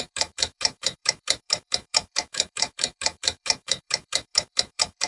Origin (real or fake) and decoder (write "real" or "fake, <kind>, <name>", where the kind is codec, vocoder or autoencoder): fake, autoencoder, DAC-VAE